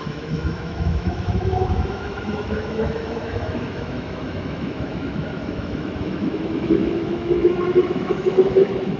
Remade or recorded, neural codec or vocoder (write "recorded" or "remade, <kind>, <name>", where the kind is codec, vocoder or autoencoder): remade, autoencoder, DAC-VAE